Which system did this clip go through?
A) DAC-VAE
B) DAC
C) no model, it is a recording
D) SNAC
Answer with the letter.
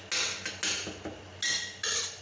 C